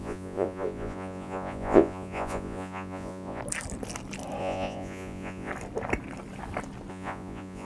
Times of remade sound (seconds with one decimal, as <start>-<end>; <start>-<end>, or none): 0.0-3.4; 4.4-5.5; 6.9-7.7